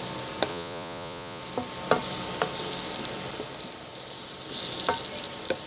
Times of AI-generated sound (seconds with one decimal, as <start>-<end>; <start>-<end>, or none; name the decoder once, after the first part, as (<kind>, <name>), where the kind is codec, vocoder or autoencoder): 0.5-1.4 (vocoder, Vocos)